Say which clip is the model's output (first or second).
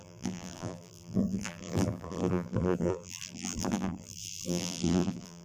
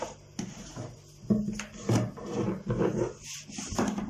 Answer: first